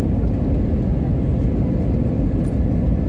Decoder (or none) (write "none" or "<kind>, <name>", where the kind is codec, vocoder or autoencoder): none